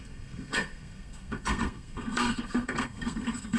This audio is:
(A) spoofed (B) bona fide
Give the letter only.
A